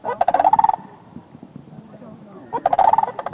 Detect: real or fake fake